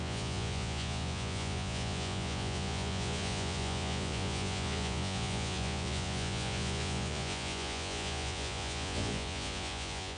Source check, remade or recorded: remade